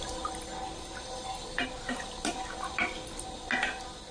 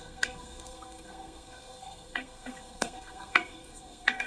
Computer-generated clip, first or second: second